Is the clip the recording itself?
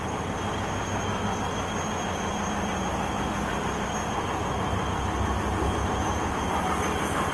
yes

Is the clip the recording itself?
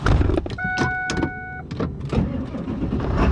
yes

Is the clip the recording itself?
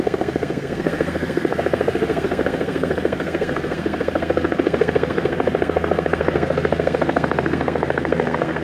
no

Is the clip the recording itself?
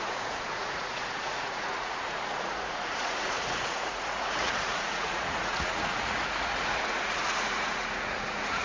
no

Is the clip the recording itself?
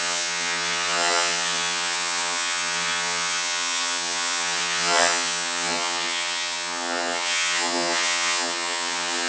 no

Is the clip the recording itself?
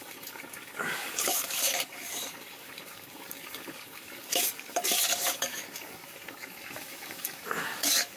no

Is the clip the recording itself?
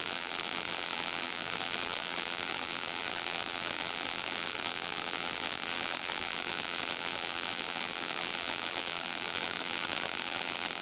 no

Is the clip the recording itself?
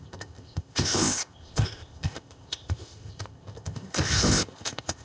no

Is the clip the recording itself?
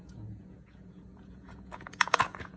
no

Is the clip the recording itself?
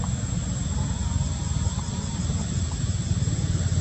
yes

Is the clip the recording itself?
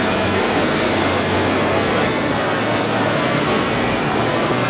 no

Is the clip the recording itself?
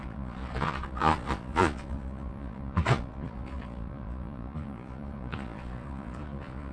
no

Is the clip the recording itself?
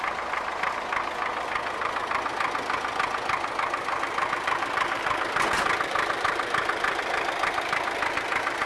yes